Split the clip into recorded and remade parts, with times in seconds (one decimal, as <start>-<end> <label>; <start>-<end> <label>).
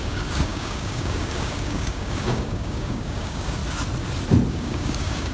0.0-3.6 remade; 3.6-4.5 recorded; 4.5-5.3 remade